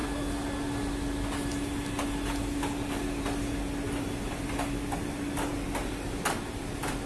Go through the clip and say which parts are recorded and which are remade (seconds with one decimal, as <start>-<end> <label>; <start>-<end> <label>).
0.0-7.1 recorded